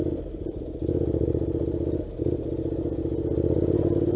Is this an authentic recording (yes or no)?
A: yes